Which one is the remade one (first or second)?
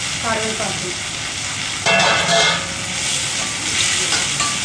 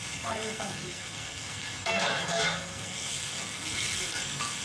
second